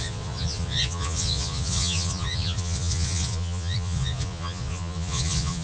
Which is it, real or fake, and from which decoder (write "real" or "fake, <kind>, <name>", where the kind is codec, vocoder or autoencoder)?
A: fake, vocoder, Vocos